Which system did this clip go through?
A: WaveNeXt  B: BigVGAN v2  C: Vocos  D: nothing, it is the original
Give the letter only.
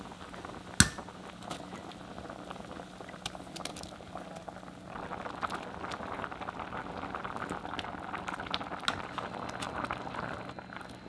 D